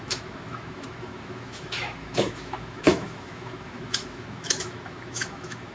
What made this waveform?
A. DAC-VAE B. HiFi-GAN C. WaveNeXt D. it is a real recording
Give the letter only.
A